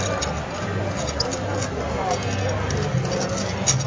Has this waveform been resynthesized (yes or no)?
no